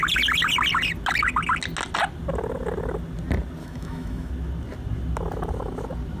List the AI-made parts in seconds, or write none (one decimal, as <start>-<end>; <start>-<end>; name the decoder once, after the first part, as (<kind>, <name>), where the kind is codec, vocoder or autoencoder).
3.6-4.3 (autoencoder, DAC-VAE)